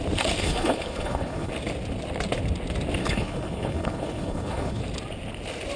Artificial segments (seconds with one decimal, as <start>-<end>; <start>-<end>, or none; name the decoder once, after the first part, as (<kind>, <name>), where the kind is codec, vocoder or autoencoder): 0.4-1.5 (codec, HILCodec); 3.0-4.8